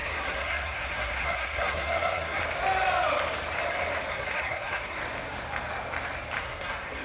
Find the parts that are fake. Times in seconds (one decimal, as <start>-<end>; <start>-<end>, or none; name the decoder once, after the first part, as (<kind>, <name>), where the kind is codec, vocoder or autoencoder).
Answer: 0.0-2.4 (codec, SNAC); 4.1-5.0; 6.4-7.0